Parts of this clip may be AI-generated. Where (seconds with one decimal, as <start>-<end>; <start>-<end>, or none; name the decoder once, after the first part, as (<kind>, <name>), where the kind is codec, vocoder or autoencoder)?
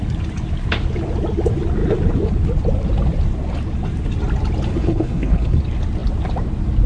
4.7-5.6 (codec, HILCodec)